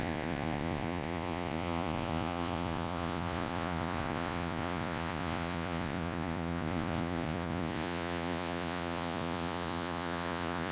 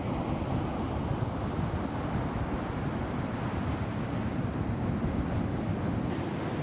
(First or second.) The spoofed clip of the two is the first